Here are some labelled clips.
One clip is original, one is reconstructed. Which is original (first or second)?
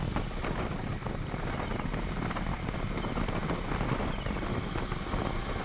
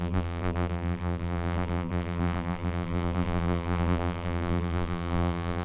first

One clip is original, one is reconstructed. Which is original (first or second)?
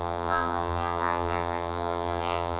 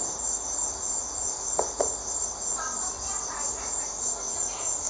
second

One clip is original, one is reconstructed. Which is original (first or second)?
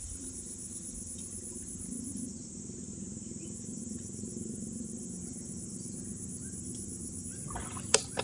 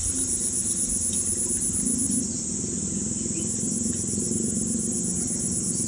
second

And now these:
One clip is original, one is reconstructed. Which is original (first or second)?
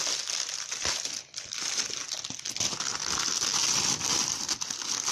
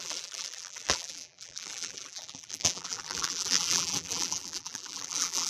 first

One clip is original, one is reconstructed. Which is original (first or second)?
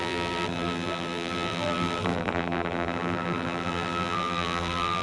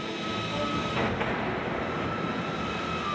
second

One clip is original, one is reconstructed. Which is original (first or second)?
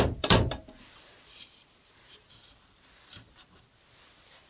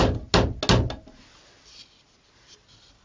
second